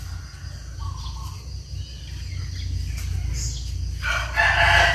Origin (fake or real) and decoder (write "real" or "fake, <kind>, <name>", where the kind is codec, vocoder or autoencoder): real